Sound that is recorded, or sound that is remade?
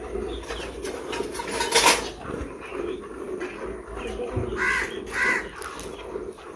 recorded